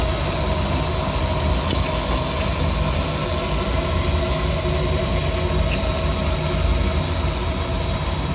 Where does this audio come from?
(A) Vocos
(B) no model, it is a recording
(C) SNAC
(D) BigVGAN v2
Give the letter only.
B